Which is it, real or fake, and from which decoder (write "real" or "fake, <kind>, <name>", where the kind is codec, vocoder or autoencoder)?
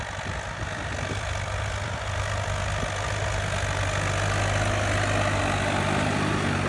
real